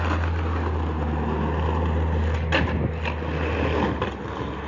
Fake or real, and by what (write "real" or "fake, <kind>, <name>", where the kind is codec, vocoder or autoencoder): real